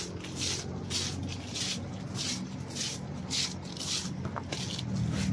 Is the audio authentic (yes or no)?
yes